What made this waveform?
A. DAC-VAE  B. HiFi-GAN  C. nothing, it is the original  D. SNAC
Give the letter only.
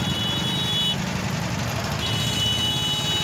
C